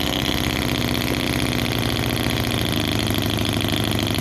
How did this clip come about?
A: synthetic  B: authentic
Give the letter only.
B